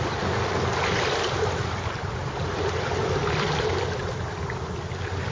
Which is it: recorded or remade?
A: recorded